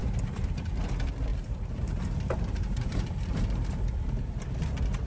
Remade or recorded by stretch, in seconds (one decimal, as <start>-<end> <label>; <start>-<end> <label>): 0.0-1.3 recorded; 1.3-4.4 remade; 4.4-5.1 recorded